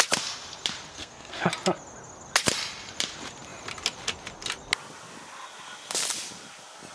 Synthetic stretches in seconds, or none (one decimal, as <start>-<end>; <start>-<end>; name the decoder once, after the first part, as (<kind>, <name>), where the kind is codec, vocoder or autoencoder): 0.9-1.5 (codec, SNAC)